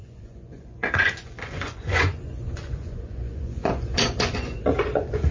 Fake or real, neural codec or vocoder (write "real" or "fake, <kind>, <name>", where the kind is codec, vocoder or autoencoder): fake, vocoder, Vocos